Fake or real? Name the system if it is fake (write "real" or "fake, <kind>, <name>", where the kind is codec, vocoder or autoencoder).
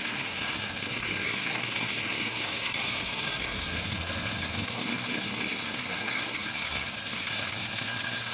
fake, codec, SNAC